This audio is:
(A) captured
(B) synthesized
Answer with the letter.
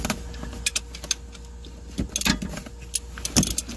A